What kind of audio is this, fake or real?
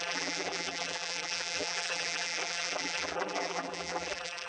fake